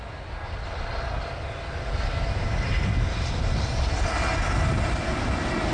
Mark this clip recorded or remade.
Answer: recorded